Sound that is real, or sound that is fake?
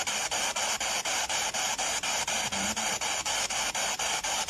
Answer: real